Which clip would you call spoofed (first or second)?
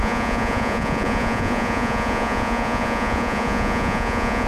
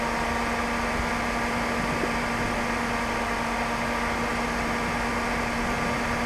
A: first